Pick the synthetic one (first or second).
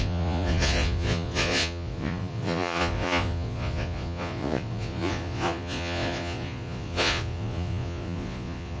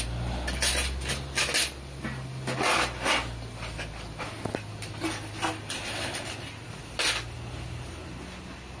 first